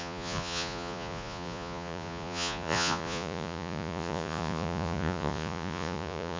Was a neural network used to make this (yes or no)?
yes